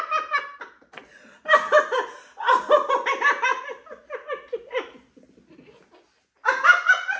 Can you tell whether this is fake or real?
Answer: real